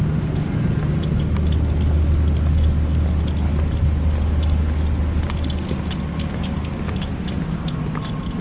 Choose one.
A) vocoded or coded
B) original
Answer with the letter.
B